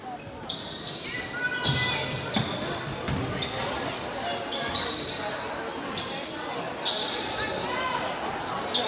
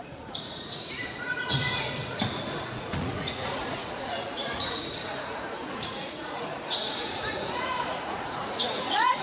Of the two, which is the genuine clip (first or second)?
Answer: first